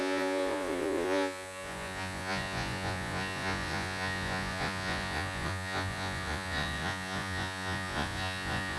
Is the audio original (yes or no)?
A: no